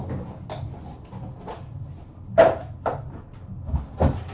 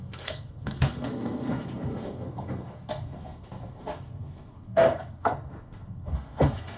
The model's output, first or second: second